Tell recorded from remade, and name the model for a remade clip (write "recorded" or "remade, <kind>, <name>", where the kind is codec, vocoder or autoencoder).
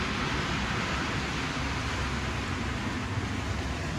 recorded